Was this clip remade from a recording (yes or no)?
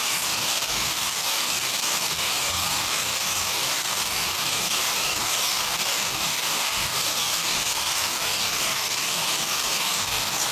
yes